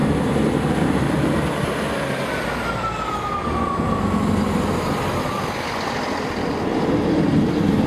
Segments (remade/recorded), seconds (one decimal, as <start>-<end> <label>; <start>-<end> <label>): 0.0-7.9 recorded